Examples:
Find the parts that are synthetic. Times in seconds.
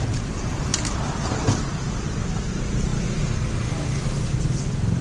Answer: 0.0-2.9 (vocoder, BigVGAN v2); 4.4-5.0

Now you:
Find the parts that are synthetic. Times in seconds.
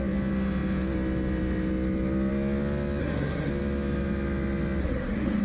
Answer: 3.0-3.5 (codec, SNAC); 4.8-5.4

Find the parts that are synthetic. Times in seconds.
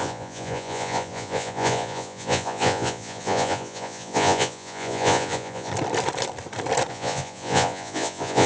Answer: 0.0-5.7 (vocoder, Vocos); 6.9-8.5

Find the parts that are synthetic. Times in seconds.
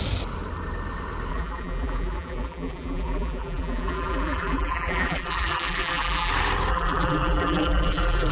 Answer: 1.3-6.3 (vocoder, BigVGAN v2); 6.7-8.3